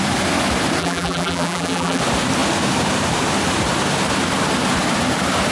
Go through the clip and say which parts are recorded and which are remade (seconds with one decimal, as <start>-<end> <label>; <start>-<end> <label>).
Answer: 0.0-0.8 recorded; 0.8-2.0 remade; 2.0-5.5 recorded